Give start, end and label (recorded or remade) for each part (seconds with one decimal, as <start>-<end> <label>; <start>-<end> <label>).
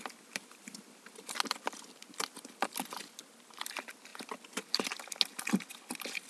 0.0-6.3 recorded